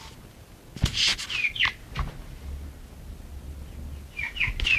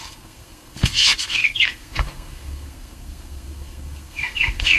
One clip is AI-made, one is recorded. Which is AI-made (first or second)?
second